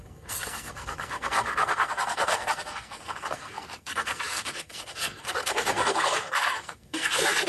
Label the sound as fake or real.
fake